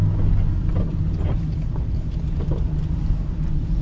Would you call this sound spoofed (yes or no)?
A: no